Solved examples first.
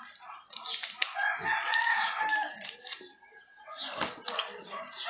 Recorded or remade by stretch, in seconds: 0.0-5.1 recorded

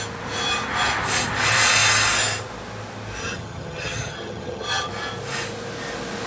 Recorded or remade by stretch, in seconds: 0.0-3.2 recorded; 3.2-4.9 remade; 4.9-6.3 recorded

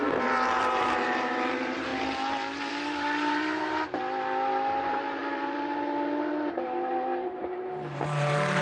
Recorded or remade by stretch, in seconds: 0.0-1.9 remade; 1.9-2.7 recorded; 2.7-4.0 remade; 4.0-4.8 recorded; 4.8-8.6 remade

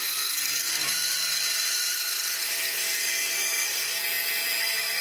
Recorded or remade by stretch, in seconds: 0.0-0.7 remade; 0.7-2.6 recorded; 2.6-4.0 remade; 4.0-4.6 recorded; 4.6-5.0 remade

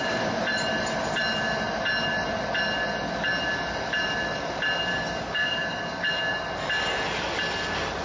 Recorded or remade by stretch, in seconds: 0.0-4.9 recorded; 4.9-6.1 remade; 6.1-8.0 recorded

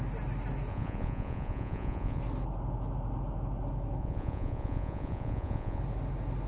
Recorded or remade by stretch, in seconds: 0.0-0.7 recorded; 0.7-2.2 remade; 2.2-4.0 recorded; 4.0-5.8 remade; 5.8-6.5 recorded